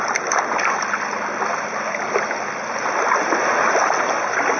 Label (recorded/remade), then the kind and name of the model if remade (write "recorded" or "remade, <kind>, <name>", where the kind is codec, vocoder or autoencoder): recorded